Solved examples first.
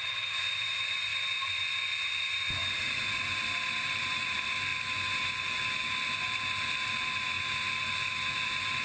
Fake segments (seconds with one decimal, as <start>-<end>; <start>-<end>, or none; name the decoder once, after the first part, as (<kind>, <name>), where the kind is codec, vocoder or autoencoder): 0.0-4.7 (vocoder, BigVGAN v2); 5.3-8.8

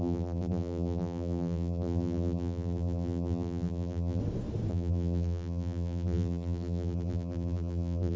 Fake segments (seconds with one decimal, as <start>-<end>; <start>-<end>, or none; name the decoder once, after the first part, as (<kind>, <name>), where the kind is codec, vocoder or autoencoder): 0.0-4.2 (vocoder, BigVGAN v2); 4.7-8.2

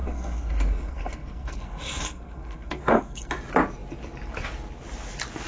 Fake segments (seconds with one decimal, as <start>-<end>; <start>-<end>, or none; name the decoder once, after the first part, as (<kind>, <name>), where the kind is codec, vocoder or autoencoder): 0.0-3.3 (codec, SNAC)

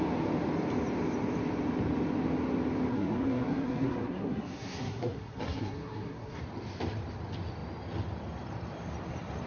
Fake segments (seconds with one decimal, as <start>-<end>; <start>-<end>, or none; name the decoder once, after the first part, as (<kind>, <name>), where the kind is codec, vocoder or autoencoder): 2.9-6.4 (codec, SNAC)

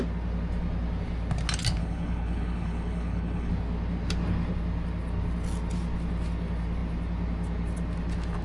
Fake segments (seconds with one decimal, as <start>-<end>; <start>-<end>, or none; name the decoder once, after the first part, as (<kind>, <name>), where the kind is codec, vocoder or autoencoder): 1.8-3.5 (codec, HILCodec)